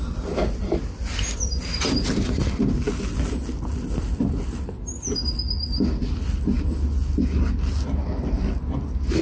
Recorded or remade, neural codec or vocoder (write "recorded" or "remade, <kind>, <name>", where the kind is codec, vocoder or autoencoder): recorded